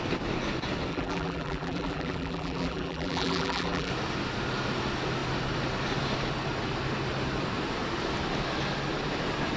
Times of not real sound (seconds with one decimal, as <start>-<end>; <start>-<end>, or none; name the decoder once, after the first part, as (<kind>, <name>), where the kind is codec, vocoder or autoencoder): 0.9-3.9 (vocoder, BigVGAN v2)